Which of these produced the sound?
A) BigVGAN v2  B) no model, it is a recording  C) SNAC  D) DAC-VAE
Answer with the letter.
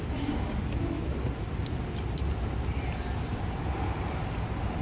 B